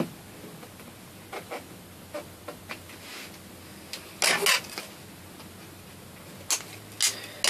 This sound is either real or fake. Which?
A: real